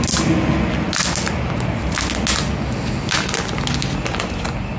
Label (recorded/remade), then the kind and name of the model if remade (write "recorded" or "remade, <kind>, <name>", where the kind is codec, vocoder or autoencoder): recorded